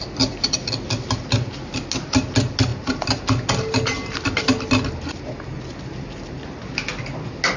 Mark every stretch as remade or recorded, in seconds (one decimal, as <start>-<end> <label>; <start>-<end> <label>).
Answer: 0.0-7.6 recorded